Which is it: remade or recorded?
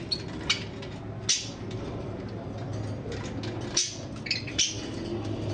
recorded